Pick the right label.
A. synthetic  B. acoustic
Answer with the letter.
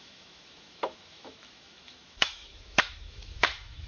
A